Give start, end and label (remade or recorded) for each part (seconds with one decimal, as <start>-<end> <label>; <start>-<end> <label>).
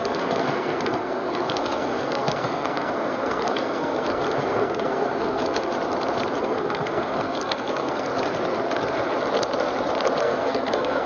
0.0-5.7 remade; 5.7-6.4 recorded; 6.4-8.1 remade; 8.1-10.2 recorded; 10.2-11.1 remade